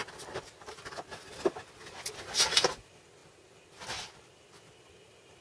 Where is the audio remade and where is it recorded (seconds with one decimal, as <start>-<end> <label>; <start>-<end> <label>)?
0.0-5.4 recorded